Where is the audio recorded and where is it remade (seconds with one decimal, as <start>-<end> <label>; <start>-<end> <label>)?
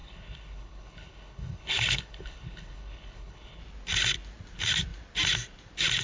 0.0-3.6 remade; 3.6-6.0 recorded